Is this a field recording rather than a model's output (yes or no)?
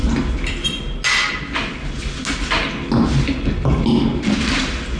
yes